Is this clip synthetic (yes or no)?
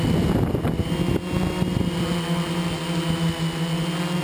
no